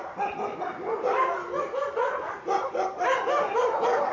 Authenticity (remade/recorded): recorded